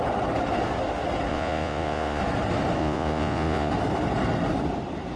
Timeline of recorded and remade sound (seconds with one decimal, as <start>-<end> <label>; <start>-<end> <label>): 0.0-1.3 recorded; 1.3-2.2 remade; 2.2-2.8 recorded; 2.8-3.7 remade; 3.7-5.2 recorded